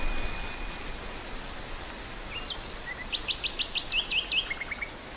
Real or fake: real